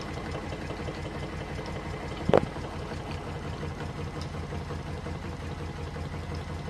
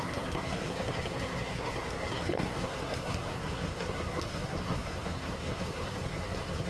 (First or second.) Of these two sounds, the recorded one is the first